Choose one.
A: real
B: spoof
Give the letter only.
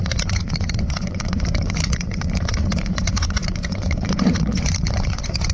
B